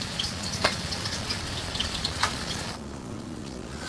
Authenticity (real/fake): fake